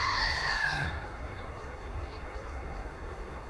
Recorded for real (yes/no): no